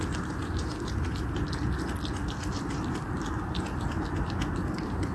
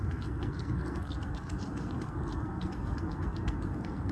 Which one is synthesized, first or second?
second